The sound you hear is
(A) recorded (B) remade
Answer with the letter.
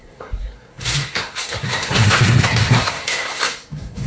B